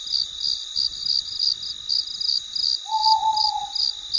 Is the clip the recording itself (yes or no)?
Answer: yes